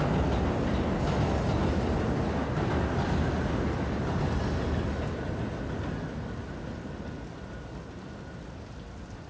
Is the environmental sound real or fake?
real